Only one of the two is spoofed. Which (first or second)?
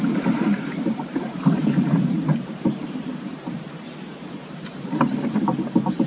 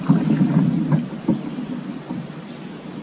first